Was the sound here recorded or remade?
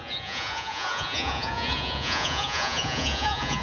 remade